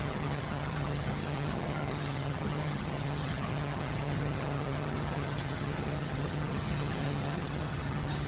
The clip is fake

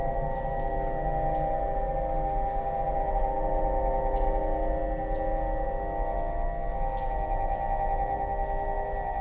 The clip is real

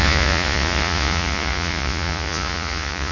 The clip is fake